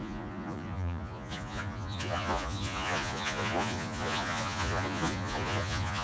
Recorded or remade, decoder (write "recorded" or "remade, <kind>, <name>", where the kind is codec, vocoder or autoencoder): remade, vocoder, Vocos